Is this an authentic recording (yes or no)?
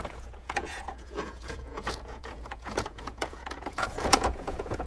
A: no